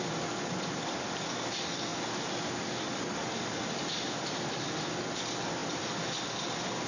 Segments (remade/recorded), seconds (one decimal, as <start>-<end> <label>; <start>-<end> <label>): 0.0-6.9 recorded